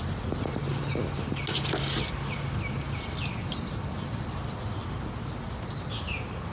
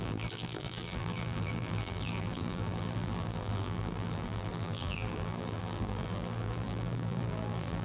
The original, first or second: first